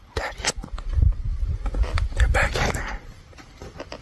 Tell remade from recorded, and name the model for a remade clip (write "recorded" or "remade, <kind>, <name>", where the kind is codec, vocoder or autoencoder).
remade, vocoder, BigVGAN v2